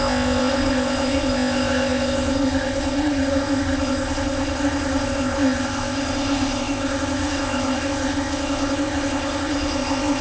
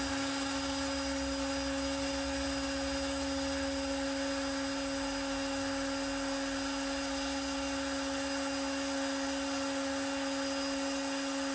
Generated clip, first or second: first